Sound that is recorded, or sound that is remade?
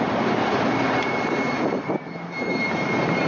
remade